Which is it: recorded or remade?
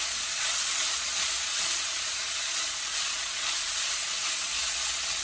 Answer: remade